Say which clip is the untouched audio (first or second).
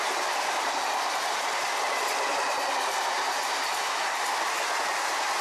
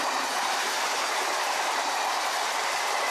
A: first